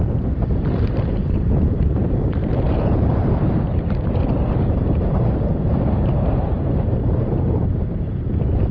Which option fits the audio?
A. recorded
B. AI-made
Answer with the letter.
B